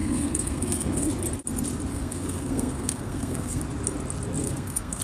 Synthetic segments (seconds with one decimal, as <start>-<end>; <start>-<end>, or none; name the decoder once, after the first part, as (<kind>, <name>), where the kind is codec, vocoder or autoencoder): 0.0-1.1 (codec, SNAC); 1.9-3.6; 4.4-5.0